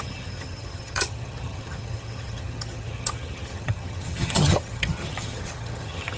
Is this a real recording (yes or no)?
no